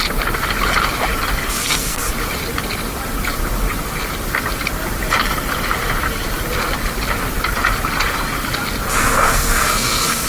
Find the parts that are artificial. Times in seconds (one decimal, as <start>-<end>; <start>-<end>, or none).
1.5-2.1; 8.9-10.3